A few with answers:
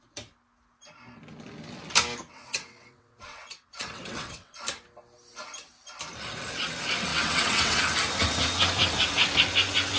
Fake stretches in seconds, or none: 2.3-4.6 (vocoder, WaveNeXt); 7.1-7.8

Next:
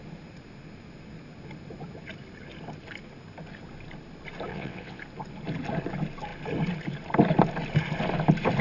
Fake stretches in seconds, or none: 4.5-5.0 (vocoder, WaveNeXt)

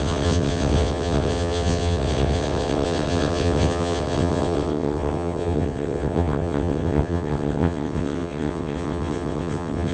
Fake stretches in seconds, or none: 0.0-9.9 (vocoder, WaveNeXt)